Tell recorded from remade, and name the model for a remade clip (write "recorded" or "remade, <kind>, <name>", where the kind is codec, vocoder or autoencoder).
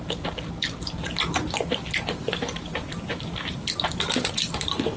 recorded